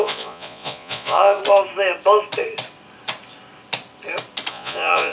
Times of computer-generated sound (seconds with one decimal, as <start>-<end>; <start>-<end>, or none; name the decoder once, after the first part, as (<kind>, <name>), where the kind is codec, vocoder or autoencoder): 0.0-1.4 (vocoder, Vocos); 4.5-5.1